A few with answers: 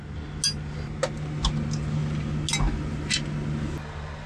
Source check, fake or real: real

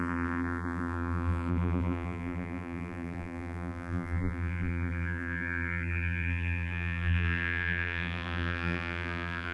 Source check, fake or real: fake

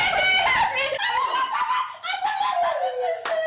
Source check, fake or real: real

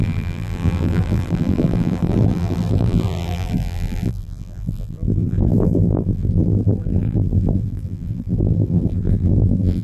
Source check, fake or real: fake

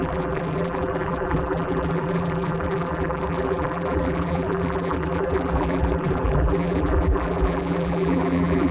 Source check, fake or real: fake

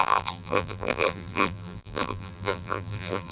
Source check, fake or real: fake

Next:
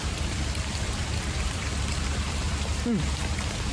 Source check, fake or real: fake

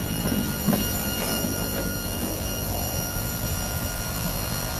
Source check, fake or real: fake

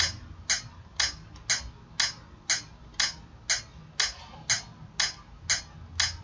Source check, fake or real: real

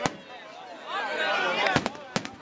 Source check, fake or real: real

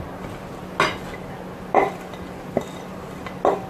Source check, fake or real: real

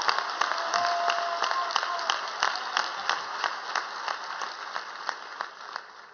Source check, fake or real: real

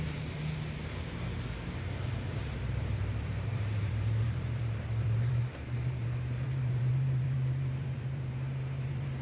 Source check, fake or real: fake